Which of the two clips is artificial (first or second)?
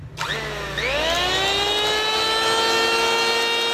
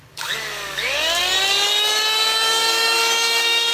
second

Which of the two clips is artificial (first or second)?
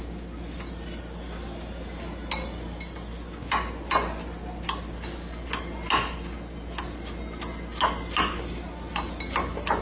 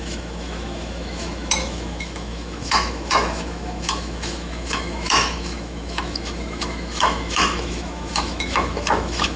second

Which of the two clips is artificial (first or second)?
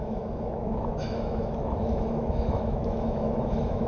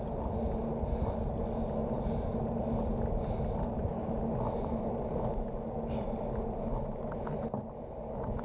first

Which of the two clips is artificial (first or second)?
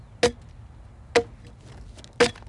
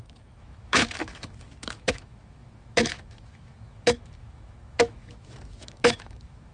second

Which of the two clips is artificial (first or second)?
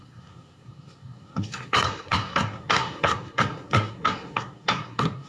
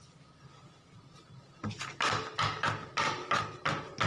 first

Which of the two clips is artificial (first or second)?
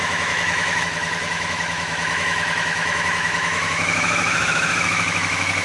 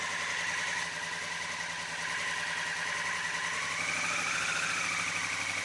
first